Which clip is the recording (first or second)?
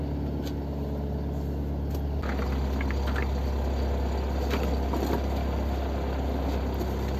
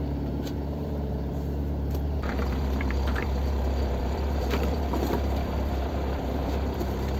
first